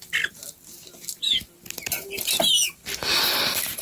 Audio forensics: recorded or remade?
recorded